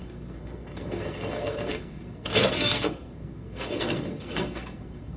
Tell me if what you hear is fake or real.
fake